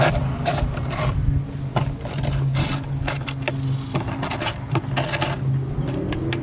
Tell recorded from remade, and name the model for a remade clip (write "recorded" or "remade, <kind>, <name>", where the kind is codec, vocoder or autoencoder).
recorded